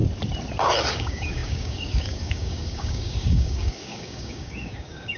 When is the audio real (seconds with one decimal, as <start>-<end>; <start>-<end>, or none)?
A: 0.0-0.9